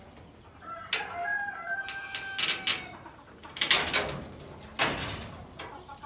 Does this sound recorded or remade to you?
recorded